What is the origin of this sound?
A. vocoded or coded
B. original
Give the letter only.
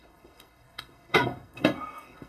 A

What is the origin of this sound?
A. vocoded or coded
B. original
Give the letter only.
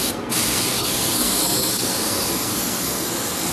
A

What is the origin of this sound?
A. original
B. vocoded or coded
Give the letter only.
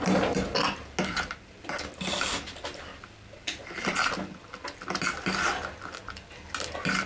A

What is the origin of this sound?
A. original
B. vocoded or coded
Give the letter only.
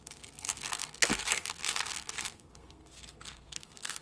B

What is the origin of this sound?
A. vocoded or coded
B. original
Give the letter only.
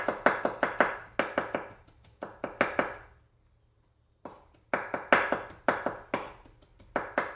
B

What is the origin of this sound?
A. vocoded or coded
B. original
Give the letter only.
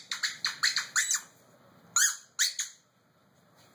B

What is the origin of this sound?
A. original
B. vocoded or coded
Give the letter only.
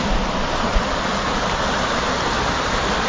A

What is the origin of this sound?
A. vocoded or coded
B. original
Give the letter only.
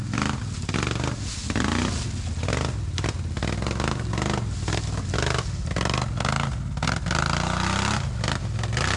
B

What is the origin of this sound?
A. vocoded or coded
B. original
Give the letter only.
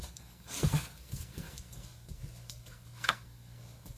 A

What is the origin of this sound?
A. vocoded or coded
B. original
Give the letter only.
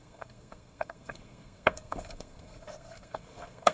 A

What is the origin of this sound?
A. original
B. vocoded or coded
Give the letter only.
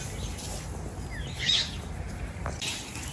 A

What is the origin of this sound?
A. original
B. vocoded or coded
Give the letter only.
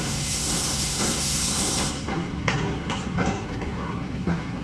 B